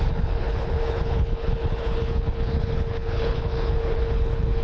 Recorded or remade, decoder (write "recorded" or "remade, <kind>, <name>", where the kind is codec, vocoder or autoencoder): remade, codec, HILCodec